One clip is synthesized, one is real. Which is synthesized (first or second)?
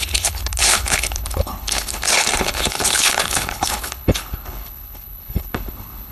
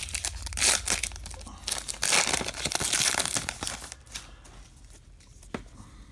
first